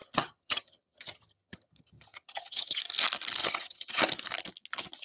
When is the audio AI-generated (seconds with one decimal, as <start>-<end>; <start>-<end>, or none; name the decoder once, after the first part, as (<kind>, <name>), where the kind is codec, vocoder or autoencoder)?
0.0-2.8 (vocoder, HiFi-GAN); 3.4-4.0